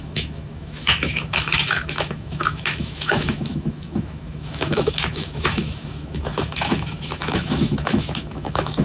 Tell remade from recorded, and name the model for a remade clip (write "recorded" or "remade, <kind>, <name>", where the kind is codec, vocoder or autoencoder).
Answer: remade, autoencoder, DAC-VAE